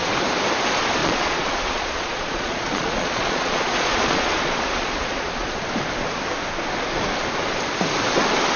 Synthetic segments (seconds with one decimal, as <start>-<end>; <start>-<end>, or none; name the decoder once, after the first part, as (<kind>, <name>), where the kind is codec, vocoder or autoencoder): 1.0-5.7 (vocoder, Vocos)